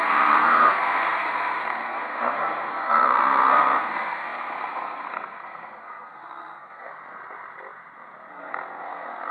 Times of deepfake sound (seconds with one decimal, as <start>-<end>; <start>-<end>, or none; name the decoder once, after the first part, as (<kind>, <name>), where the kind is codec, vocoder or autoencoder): 0.0-6.9 (codec, SNAC); 8.3-9.3